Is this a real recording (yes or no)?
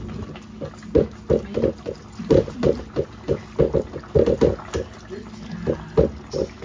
yes